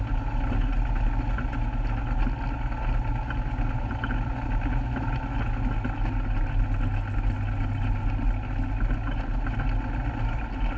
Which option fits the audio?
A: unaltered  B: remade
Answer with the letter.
A